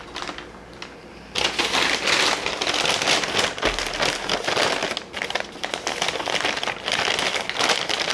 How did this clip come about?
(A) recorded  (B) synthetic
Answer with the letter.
A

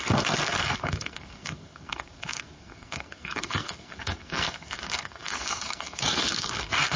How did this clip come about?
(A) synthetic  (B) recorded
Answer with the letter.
A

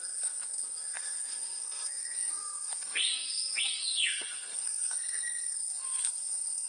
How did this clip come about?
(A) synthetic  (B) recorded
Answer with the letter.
A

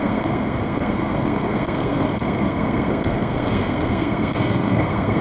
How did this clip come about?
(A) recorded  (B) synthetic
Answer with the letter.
B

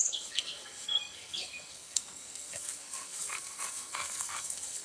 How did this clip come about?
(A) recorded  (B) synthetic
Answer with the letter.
B